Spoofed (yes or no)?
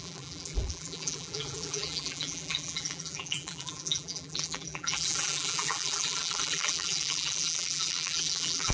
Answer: yes